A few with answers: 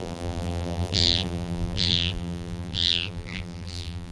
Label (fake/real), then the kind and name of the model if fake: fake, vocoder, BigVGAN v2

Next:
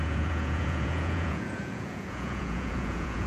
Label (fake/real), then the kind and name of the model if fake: fake, vocoder, Vocos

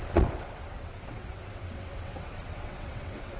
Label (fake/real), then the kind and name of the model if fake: fake, vocoder, WaveNeXt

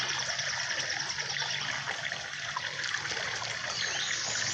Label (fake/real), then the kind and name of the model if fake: real